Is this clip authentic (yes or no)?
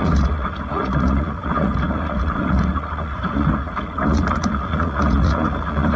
no